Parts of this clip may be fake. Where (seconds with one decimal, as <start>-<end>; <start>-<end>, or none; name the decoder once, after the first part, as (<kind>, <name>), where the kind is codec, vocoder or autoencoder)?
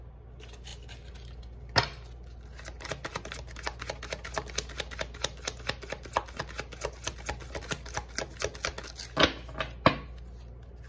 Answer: none